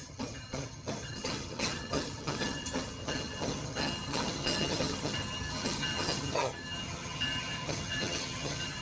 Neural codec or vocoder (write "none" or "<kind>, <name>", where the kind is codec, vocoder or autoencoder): vocoder, HiFi-GAN